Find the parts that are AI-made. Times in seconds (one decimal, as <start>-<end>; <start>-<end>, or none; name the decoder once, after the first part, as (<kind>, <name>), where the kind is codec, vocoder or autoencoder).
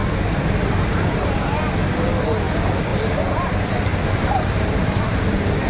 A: 0.0-1.6 (vocoder, BigVGAN v2); 3.9-5.7